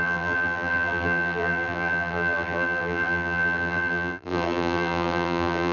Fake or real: fake